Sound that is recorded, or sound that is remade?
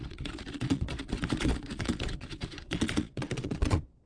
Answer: remade